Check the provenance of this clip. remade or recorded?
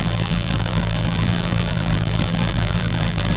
remade